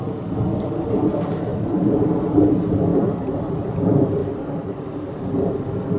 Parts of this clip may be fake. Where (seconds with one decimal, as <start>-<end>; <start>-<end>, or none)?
2.9-3.7; 4.2-5.5